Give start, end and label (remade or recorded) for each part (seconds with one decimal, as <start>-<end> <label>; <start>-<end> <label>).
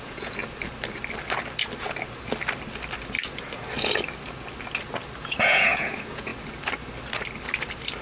0.0-0.4 remade; 0.4-5.2 recorded; 5.2-6.3 remade; 6.3-8.0 recorded